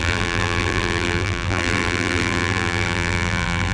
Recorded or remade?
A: remade